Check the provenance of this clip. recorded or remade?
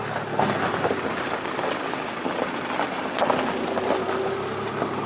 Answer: recorded